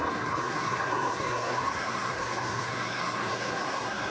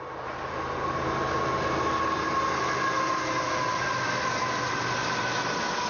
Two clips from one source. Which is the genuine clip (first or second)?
second